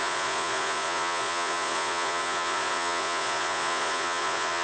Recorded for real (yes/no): no